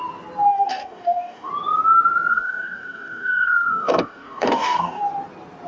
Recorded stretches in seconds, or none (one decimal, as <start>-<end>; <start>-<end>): 0.0-0.5; 1.5-2.3; 5.0-5.7